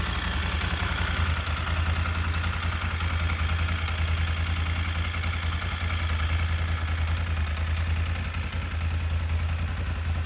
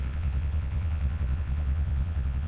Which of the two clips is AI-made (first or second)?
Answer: second